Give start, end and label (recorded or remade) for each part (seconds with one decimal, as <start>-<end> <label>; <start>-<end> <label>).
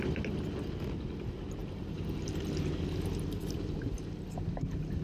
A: 0.0-1.6 recorded; 1.6-4.6 remade; 4.6-5.0 recorded